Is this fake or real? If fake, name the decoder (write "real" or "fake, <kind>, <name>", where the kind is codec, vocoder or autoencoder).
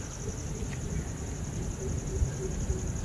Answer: real